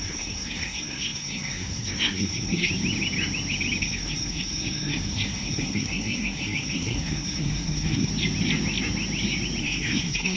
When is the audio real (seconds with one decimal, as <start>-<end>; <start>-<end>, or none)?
2.7-3.8; 8.1-9.6